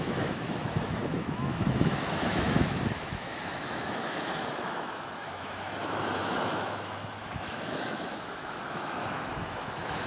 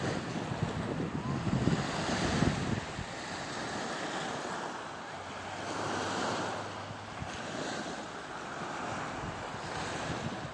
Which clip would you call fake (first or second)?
first